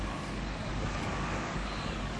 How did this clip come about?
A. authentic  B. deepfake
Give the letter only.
B